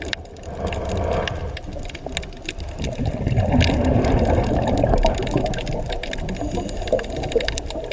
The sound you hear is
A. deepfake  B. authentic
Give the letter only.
B